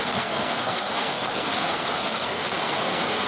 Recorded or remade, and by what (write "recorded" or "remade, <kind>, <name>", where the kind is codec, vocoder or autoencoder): remade, codec, SNAC